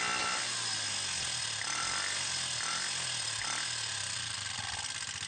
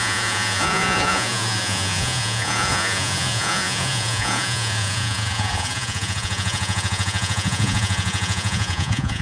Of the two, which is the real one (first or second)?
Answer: first